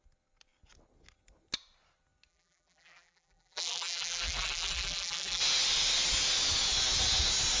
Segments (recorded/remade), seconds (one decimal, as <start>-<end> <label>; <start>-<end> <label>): 0.0-2.3 recorded; 2.3-5.4 remade; 5.4-7.6 recorded